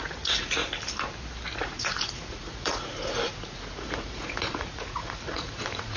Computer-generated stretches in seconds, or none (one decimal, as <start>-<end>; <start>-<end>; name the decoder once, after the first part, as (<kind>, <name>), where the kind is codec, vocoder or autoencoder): 0.0-0.6 (vocoder, Vocos); 1.6-6.0